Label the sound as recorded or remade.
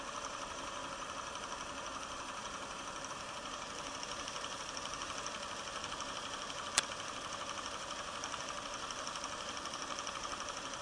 remade